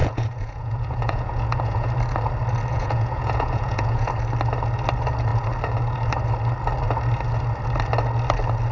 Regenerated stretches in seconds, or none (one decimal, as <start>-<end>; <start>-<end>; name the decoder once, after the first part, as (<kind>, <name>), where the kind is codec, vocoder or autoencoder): 0.0-1.9 (vocoder, Vocos); 2.7-4.1